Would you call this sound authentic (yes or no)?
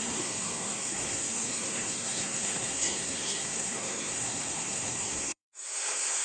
no